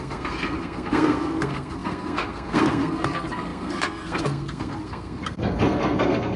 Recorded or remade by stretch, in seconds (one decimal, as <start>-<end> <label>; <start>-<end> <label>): 0.0-6.4 remade